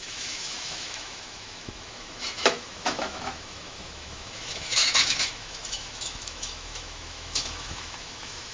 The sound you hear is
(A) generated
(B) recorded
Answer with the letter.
A